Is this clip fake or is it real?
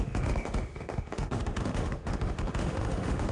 fake